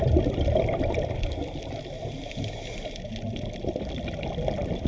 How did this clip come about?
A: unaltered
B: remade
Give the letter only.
A